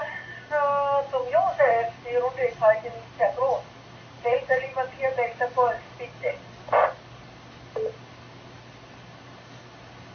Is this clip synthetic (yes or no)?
no